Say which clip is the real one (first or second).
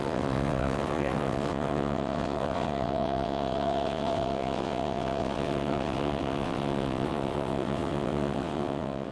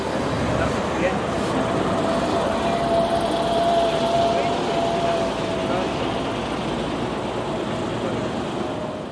second